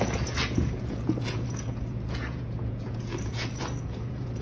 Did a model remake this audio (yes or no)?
yes